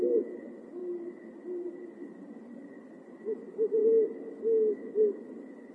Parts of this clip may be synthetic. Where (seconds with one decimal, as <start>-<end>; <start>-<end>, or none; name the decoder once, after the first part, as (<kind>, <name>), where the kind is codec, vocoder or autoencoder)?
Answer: none